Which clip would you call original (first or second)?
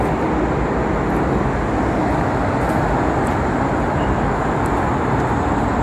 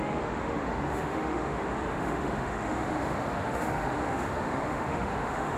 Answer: first